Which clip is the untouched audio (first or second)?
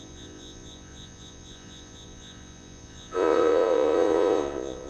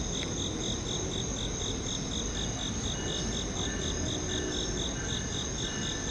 second